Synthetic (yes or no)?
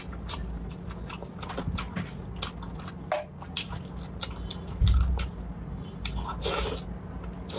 no